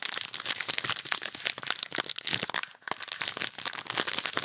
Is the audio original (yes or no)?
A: yes